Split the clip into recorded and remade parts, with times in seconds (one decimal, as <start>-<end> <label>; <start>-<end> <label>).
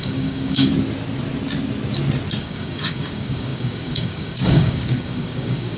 0.0-0.7 remade; 0.7-2.4 recorded; 2.4-5.8 remade